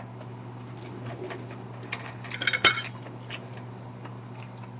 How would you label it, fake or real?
real